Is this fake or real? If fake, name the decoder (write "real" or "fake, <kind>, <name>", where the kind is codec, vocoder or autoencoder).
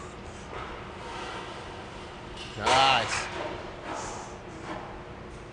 real